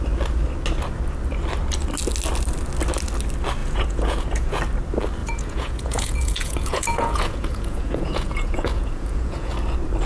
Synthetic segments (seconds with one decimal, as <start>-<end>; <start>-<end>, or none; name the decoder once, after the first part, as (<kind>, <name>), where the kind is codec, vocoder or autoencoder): 3.6-4.6 (vocoder, Vocos); 5.2-9.5